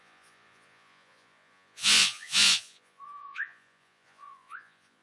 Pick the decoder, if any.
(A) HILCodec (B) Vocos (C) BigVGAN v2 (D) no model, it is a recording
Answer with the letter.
B